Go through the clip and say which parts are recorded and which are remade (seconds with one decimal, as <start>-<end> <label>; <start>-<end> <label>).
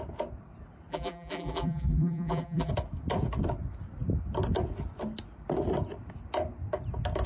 0.0-0.9 recorded; 0.9-2.7 remade; 2.7-7.3 recorded